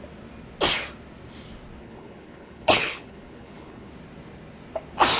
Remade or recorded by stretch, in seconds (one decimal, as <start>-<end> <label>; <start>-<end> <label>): 0.0-1.8 recorded; 1.8-3.9 remade; 3.9-5.2 recorded